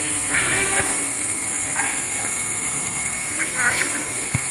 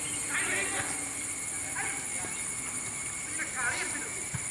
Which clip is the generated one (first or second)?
first